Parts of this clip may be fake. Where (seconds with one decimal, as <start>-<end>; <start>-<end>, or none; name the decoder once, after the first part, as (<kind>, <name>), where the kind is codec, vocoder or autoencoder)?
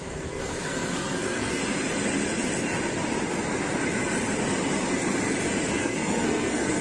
0.0-1.6 (codec, SNAC); 5.7-6.8